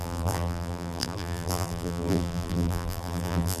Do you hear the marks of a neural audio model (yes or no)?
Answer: yes